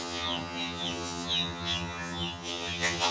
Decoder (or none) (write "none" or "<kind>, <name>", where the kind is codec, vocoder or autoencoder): vocoder, HiFi-GAN